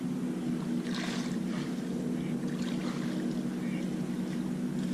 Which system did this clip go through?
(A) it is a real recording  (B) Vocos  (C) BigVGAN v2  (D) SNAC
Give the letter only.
A